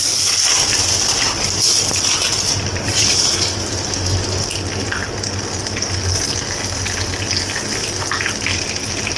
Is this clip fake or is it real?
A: real